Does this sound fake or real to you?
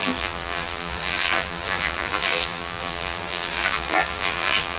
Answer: fake